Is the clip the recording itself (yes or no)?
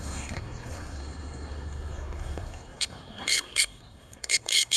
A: no